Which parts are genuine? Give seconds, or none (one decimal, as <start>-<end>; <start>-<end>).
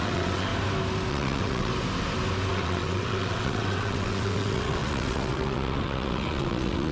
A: 0.5-1.1; 1.7-2.5